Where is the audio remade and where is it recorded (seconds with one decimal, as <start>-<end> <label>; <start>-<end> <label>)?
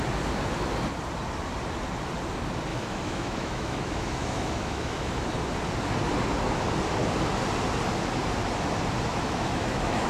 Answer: 0.0-2.7 recorded; 2.7-5.1 remade; 5.1-9.1 recorded; 9.1-10.1 remade